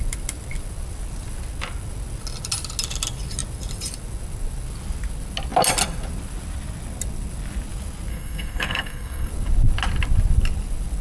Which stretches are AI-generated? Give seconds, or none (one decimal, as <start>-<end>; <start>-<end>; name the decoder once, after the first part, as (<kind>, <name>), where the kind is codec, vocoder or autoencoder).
8.1-9.3 (codec, SNAC)